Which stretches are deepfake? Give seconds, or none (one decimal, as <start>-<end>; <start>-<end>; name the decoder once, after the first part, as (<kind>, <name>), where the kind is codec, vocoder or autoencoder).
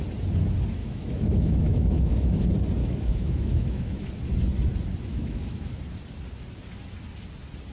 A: 0.8-2.3 (autoencoder, DAC-VAE); 2.8-4.1; 5.1-5.7